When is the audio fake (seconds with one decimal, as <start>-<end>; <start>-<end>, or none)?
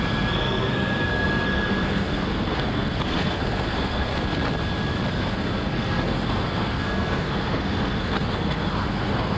0.0-4.1; 5.1-9.4